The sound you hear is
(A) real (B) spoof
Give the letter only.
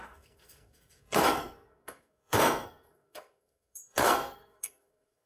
B